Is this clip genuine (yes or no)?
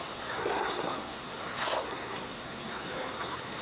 no